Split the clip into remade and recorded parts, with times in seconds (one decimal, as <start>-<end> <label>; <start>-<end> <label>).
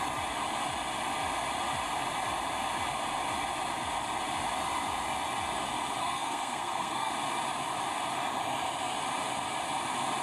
0.0-6.0 recorded; 6.0-7.1 remade; 7.1-10.2 recorded